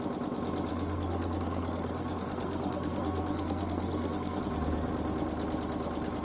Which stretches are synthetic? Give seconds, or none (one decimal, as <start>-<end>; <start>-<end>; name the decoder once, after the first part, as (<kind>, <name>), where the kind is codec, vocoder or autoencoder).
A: 0.7-4.4 (codec, SNAC)